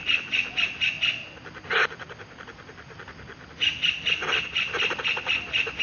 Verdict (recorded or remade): recorded